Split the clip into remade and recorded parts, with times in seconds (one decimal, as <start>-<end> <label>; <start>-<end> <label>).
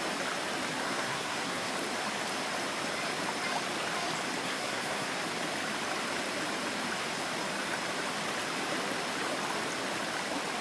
0.0-0.8 recorded; 0.8-1.7 remade; 1.7-4.4 recorded; 4.4-5.2 remade; 5.2-10.6 recorded